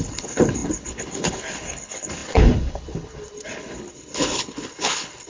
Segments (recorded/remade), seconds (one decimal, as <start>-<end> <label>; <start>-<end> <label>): 0.0-5.3 remade